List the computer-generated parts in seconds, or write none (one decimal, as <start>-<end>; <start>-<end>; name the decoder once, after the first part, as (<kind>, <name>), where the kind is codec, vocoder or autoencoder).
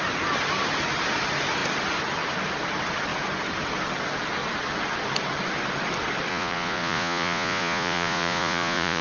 6.3-9.0 (vocoder, Vocos)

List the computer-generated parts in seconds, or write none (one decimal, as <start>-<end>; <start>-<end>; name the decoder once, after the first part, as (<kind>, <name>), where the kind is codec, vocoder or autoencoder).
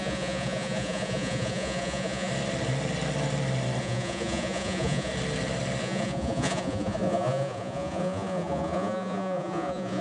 0.0-2.3 (vocoder, Vocos); 3.8-5.1; 5.8-10.0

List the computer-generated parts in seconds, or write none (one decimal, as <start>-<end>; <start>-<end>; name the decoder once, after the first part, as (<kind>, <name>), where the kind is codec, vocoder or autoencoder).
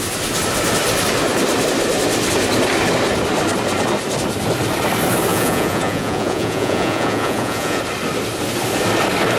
5.3-7.8 (vocoder, Vocos)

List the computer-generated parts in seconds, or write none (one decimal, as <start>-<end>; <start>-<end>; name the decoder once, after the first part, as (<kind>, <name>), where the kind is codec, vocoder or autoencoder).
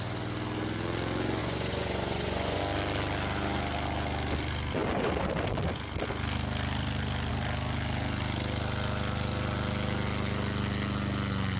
1.4-2.6 (vocoder, Vocos)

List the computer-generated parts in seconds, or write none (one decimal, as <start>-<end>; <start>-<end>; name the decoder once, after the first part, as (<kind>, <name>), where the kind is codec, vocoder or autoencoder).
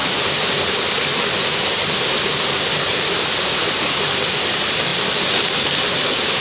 none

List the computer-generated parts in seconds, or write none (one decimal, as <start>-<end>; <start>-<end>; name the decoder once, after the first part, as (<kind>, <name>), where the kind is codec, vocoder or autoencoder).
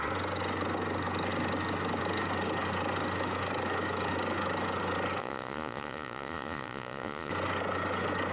5.2-7.3 (vocoder, Vocos)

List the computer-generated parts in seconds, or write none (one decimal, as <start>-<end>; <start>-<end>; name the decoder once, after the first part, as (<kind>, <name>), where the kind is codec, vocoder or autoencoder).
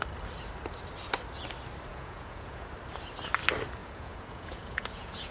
1.9-2.7 (vocoder, Vocos); 3.8-5.3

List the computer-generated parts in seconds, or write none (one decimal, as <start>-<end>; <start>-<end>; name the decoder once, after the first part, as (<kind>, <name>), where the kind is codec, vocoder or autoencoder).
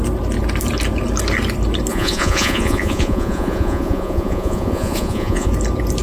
1.9-5.5 (vocoder, Vocos)